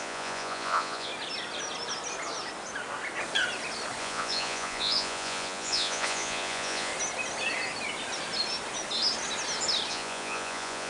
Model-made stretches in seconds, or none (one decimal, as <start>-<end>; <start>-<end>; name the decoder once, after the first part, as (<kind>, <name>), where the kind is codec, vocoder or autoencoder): 0.0-1.1 (vocoder, Vocos); 4.0-6.9; 9.9-10.9